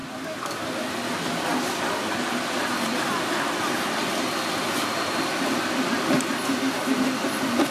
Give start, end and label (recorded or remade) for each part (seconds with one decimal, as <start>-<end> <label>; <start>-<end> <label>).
0.0-7.7 recorded